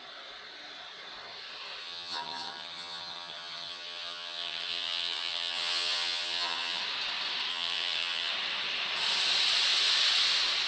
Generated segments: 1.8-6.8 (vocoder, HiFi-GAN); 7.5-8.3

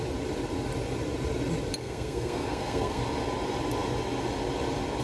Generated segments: 1.8-3.0 (codec, SNAC)

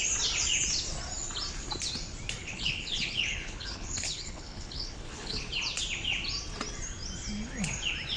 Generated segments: 2.4-5.4 (codec, HILCodec)

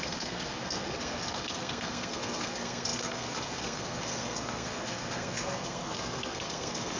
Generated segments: 0.0-7.0 (codec, SNAC)

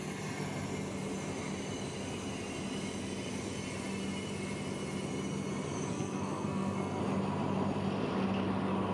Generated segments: 5.9-7.0 (codec, SNAC)

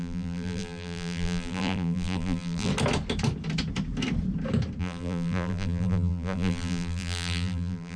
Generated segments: 0.0-2.7 (vocoder, BigVGAN v2); 4.8-8.0

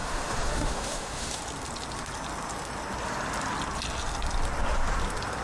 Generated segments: 0.0-1.4 (autoencoder, DAC-VAE)